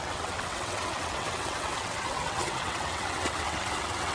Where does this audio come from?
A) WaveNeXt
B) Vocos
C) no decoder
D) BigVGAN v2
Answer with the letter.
A